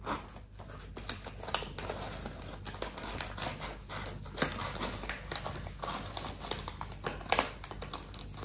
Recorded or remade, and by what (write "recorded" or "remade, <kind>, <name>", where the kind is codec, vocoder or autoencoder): recorded